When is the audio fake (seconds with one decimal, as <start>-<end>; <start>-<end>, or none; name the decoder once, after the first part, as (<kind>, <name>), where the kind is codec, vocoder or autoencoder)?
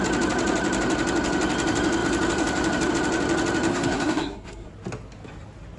3.7-4.7 (codec, SNAC)